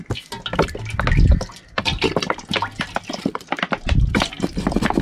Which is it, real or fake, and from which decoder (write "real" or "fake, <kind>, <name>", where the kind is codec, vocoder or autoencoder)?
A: real